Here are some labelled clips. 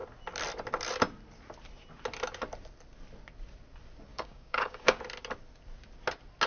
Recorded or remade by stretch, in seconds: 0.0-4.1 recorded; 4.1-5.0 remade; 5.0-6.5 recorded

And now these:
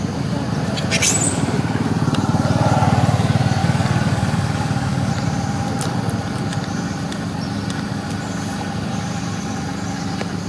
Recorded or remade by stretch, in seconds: 0.0-3.6 recorded; 3.6-5.1 remade; 5.1-10.5 recorded